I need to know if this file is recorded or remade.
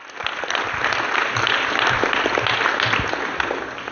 recorded